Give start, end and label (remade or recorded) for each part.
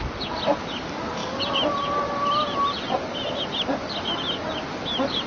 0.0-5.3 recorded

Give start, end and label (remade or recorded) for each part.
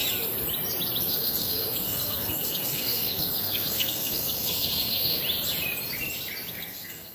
0.0-1.0 recorded; 1.0-5.2 remade; 5.2-6.5 recorded; 6.5-7.1 remade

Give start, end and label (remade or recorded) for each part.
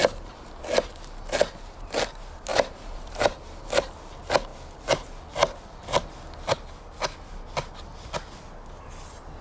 0.0-0.6 remade; 0.6-2.5 recorded; 2.5-3.3 remade; 3.3-9.4 recorded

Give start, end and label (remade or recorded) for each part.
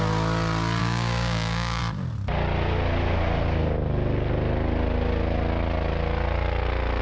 0.0-0.8 recorded; 0.8-1.8 remade; 1.8-7.0 recorded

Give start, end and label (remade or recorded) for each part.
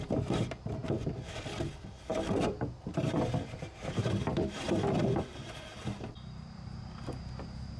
0.0-2.1 recorded; 2.1-6.8 remade; 6.8-7.8 recorded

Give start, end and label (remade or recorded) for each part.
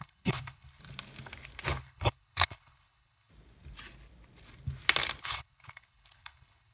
0.0-0.8 remade; 0.8-1.8 recorded; 1.8-3.3 remade; 3.3-5.2 recorded; 5.2-6.7 remade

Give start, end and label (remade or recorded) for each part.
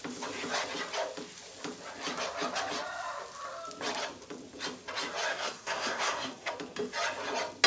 0.0-5.3 recorded; 5.3-6.5 remade; 6.5-7.7 recorded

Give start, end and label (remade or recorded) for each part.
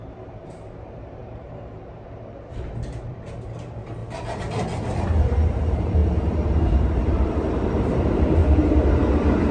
0.0-4.0 remade; 4.0-5.5 recorded; 5.5-6.0 remade; 6.0-6.8 recorded; 6.8-8.4 remade; 8.4-9.5 recorded